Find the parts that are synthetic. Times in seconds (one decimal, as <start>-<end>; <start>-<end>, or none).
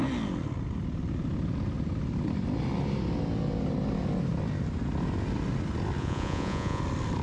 6.0-6.8